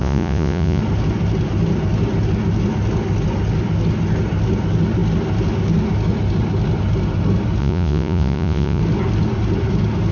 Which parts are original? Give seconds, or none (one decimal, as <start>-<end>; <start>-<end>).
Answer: 0.8-7.6; 8.8-10.1